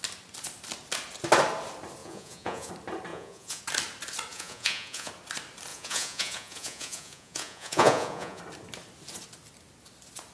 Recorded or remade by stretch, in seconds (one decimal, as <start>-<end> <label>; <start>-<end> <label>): 0.0-2.0 recorded; 2.0-2.7 remade; 2.7-3.1 recorded; 3.1-3.6 remade; 3.6-4.3 recorded; 4.3-5.1 remade; 5.1-5.7 recorded; 5.7-8.4 remade; 8.4-10.3 recorded